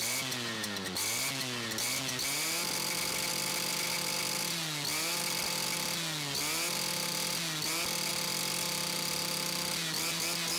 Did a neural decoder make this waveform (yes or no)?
no